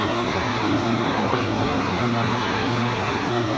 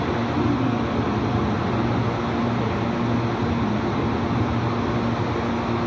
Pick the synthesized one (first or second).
first